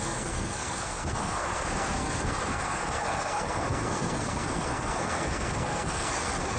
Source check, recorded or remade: remade